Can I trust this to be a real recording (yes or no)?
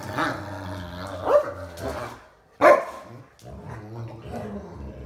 yes